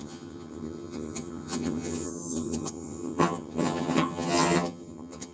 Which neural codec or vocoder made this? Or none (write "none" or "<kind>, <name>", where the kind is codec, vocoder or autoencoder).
vocoder, HiFi-GAN